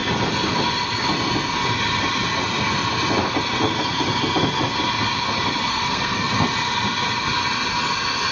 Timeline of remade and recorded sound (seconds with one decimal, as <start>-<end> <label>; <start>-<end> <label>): 0.0-5.7 recorded; 5.7-6.3 remade; 6.3-8.3 recorded